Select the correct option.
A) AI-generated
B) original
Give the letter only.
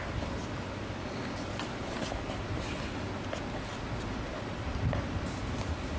B